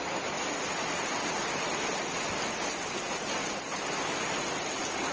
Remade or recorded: recorded